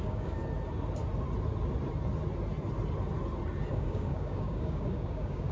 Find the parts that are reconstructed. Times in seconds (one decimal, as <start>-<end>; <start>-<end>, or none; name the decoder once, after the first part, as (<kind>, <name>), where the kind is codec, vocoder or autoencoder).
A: 0.0-0.4 (codec, DAC); 3.7-5.5